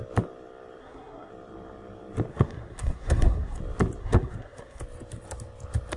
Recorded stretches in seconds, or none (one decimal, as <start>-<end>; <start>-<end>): 0.0-0.8; 1.3-2.3; 3.6-4.0; 4.8-6.0